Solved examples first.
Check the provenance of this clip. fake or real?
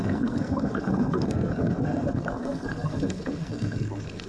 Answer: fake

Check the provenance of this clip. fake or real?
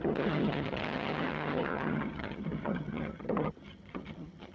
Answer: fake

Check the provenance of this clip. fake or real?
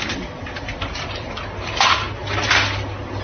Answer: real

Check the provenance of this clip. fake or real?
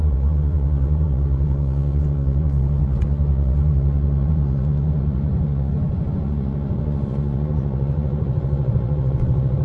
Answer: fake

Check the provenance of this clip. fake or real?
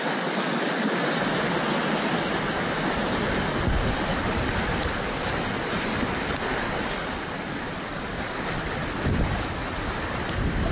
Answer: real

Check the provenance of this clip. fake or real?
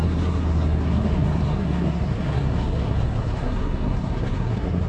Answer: fake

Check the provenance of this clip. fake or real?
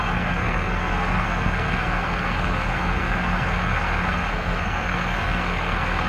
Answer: fake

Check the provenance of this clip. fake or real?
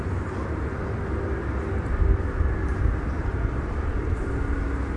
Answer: real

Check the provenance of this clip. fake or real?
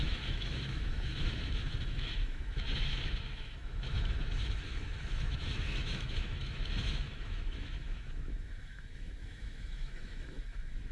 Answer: fake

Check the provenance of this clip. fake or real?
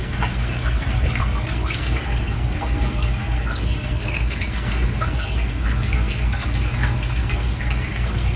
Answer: fake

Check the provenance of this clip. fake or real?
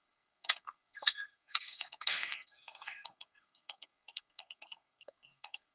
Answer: fake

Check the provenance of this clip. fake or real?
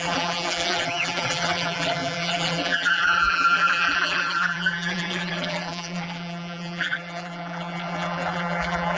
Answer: fake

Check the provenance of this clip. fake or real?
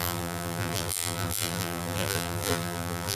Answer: fake